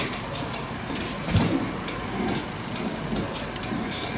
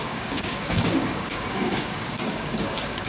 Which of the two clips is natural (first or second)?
first